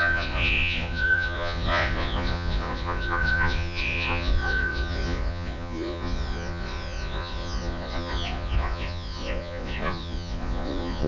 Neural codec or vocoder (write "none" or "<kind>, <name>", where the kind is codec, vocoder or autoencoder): vocoder, Vocos